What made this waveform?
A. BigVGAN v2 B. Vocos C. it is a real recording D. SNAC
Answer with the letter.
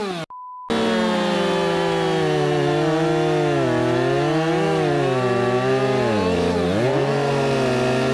C